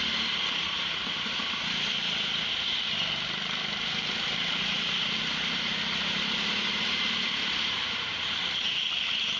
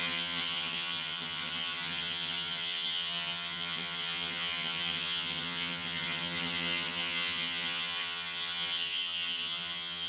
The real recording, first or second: first